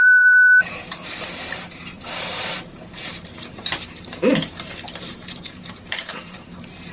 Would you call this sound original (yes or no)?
no